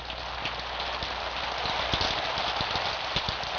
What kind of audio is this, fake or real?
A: real